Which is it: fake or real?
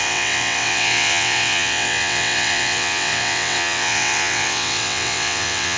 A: fake